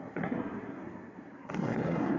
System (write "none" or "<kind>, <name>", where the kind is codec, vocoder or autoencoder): codec, SNAC